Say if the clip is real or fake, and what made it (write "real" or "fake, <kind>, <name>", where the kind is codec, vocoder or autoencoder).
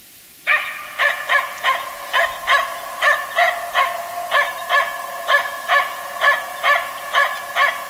fake, vocoder, Vocos